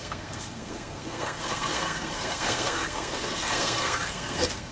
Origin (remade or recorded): remade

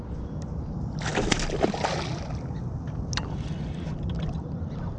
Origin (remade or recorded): recorded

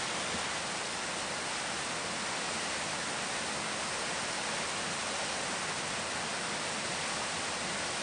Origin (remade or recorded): recorded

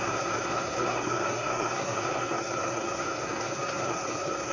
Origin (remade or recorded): remade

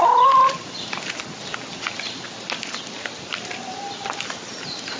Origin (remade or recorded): recorded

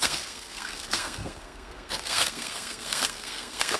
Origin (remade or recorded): remade